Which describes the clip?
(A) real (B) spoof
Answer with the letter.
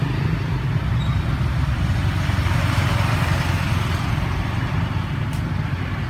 A